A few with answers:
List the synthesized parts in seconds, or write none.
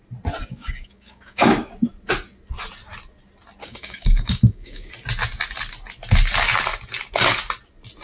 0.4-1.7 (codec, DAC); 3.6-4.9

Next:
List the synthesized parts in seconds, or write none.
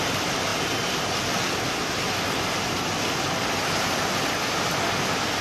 none